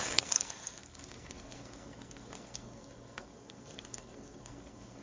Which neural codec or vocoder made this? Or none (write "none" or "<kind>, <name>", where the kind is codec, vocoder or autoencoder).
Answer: codec, SNAC